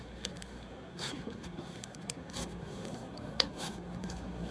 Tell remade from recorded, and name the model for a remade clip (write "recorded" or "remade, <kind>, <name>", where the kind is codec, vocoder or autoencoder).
remade, codec, SNAC